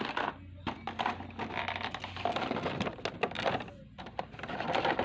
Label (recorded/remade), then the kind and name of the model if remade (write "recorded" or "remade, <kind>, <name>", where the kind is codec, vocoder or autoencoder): recorded